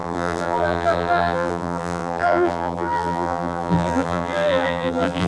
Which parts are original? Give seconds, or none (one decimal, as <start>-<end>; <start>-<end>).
none